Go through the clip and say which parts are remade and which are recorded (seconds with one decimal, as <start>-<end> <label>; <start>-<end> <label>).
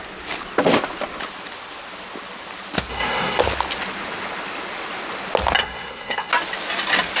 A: 0.0-2.9 recorded; 2.9-3.4 remade; 3.4-5.6 recorded; 5.6-6.3 remade; 6.3-7.2 recorded